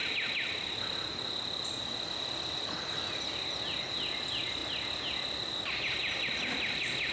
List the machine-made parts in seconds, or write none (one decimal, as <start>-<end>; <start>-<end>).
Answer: none